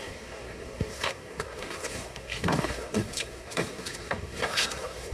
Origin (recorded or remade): remade